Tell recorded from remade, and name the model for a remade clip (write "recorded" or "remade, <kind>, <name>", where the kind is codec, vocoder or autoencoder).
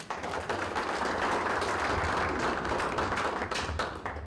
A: recorded